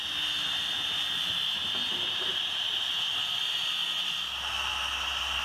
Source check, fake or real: real